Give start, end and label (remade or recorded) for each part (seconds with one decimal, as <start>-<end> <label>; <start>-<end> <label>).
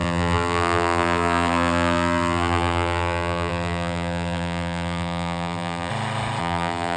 0.0-5.9 remade; 5.9-6.4 recorded; 6.4-7.0 remade